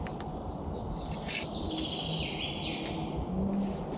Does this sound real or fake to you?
real